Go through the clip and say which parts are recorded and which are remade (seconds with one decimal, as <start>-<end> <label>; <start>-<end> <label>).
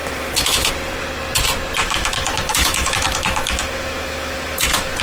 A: 0.0-0.7 remade; 0.7-1.8 recorded; 1.8-5.0 remade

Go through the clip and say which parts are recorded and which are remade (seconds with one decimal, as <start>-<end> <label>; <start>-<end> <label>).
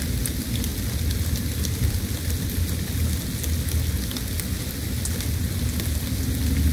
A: 0.0-6.7 recorded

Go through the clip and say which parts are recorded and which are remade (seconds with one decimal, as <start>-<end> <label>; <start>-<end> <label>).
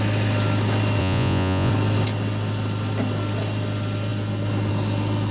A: 0.0-1.0 recorded; 1.0-1.7 remade; 1.7-5.3 recorded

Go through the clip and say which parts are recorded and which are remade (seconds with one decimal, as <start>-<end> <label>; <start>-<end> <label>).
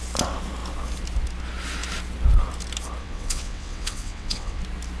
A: 0.0-3.0 recorded; 3.0-4.6 remade; 4.6-5.0 recorded